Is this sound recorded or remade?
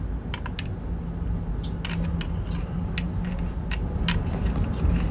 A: recorded